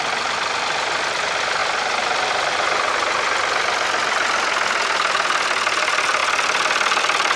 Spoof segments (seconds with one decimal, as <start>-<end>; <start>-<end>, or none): none